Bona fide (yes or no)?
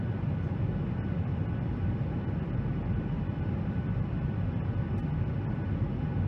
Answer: yes